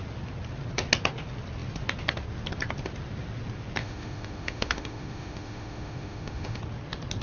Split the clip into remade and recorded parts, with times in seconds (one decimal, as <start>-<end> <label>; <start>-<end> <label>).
0.0-3.8 recorded; 3.8-6.6 remade; 6.6-7.2 recorded